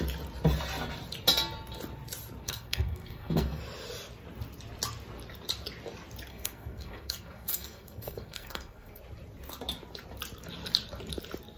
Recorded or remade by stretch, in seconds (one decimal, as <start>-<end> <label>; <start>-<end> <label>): 0.0-2.4 recorded; 2.4-3.6 remade; 3.6-6.3 recorded; 6.3-9.0 remade; 9.0-11.6 recorded